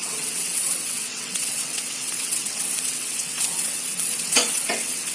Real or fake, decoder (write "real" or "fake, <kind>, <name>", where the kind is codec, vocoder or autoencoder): fake, vocoder, WaveNeXt